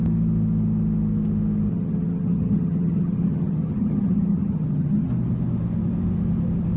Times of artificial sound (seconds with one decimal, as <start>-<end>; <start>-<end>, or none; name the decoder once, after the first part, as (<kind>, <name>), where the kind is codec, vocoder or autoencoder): 1.7-5.1 (vocoder, HiFi-GAN)